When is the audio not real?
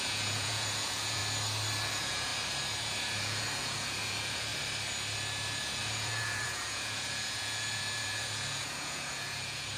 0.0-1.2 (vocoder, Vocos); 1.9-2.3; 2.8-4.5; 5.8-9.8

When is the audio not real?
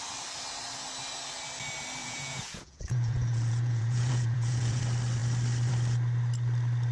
2.0-4.8 (vocoder, Vocos)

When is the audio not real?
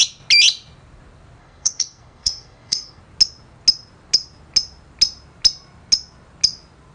1.4-3.0 (codec, SNAC)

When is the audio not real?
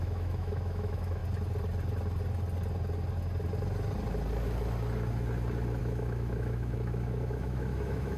0.0-1.2 (autoencoder, DAC-VAE); 5.8-8.2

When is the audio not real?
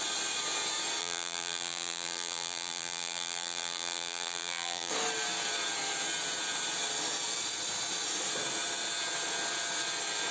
1.0-4.9 (vocoder, BigVGAN v2)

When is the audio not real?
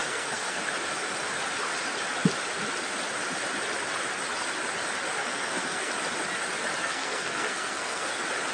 0.0-0.6 (codec, SNAC); 5.2-5.9; 6.8-8.1